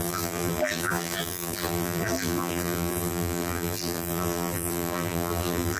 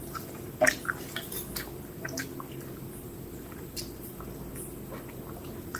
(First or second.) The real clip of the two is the second